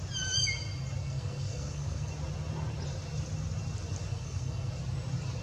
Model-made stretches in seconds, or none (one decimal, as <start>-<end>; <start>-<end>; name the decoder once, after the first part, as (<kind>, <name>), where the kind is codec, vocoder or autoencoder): 1.0-2.1 (codec, SNAC); 4.1-4.7